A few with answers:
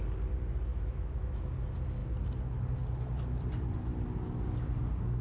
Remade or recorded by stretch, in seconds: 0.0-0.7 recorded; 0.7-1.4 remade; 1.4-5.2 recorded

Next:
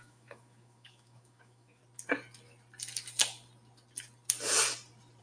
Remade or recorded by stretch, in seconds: 0.0-1.8 remade; 1.8-5.2 recorded

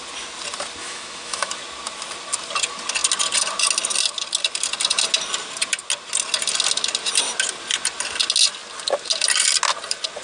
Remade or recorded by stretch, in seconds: 0.0-0.8 recorded; 0.8-1.5 remade; 1.5-10.2 recorded

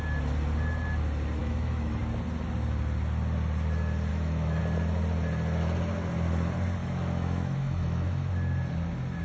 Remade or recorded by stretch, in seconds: 0.0-1.4 recorded; 1.4-2.0 remade; 2.0-4.1 recorded; 4.1-4.6 remade; 4.6-6.8 recorded; 6.8-8.3 remade; 8.3-9.2 recorded

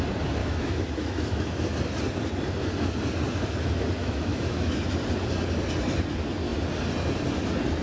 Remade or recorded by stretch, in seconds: 0.0-0.4 recorded; 0.4-1.6 remade; 1.6-4.0 recorded; 4.0-4.8 remade; 4.8-7.8 recorded